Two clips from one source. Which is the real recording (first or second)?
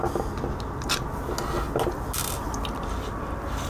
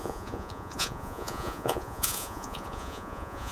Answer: first